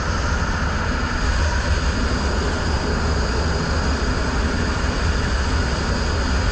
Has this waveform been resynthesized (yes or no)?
no